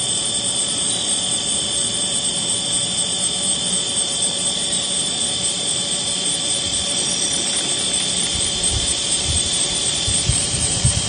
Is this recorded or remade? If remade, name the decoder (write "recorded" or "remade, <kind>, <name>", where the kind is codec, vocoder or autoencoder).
remade, vocoder, BigVGAN v2